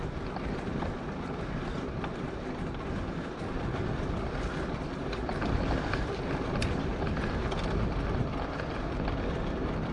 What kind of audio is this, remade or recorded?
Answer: remade